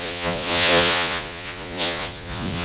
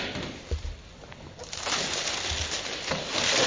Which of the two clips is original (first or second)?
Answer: second